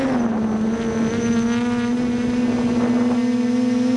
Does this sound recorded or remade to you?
recorded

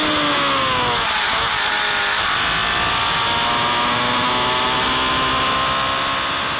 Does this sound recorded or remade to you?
recorded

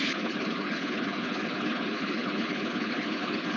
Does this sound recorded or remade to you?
remade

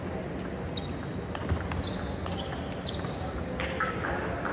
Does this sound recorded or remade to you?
recorded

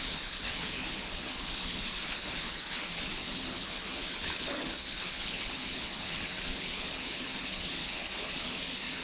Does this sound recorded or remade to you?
remade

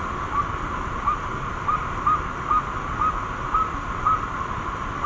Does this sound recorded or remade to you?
recorded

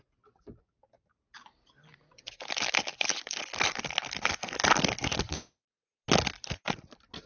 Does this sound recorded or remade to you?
recorded